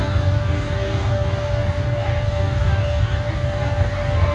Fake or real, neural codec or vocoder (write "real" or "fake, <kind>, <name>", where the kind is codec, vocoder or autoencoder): fake, codec, DAC